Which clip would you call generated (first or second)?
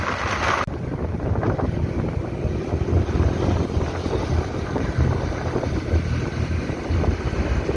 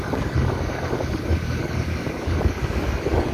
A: second